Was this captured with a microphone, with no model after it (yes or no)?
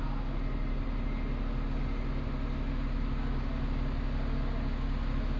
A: yes